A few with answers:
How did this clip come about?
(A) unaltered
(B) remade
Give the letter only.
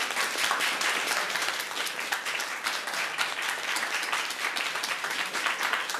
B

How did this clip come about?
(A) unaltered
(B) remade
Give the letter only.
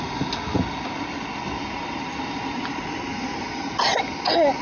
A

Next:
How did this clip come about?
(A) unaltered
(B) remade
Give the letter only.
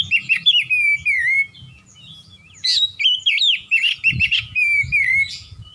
B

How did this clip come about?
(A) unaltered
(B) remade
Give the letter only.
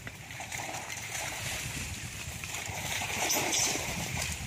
B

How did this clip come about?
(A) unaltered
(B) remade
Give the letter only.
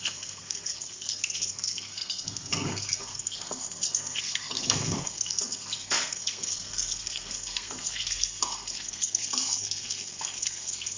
B